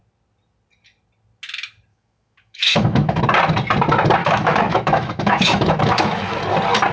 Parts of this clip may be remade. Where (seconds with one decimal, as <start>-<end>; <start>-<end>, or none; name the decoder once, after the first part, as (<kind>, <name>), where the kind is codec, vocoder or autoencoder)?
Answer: 1.9-3.2 (autoencoder, DAC-VAE); 4.2-6.4